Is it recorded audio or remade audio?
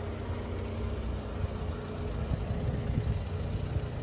recorded